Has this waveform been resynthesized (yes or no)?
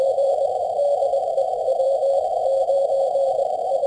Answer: yes